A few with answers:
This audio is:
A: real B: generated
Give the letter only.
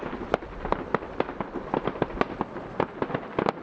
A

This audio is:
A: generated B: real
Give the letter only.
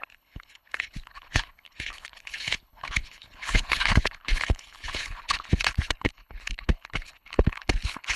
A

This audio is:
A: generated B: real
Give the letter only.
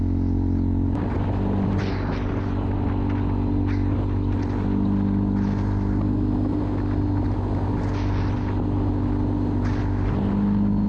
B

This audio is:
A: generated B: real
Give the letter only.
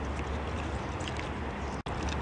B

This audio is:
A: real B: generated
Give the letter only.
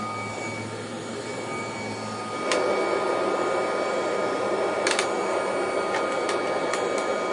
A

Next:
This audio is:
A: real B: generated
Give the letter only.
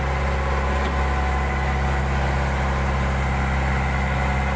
A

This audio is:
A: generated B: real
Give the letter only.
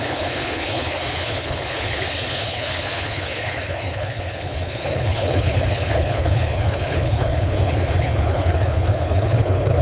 A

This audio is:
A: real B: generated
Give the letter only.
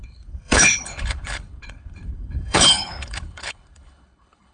B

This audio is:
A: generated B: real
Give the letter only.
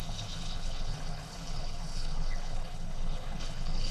A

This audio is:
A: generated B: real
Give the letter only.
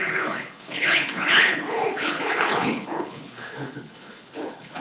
A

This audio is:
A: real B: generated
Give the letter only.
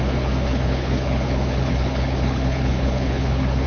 B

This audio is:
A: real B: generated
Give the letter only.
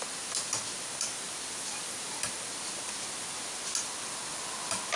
A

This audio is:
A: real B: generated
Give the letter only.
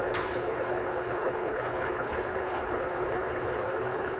B